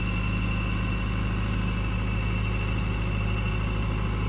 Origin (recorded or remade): recorded